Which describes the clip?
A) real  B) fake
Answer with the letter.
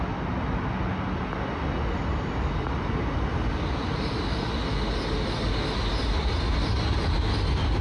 A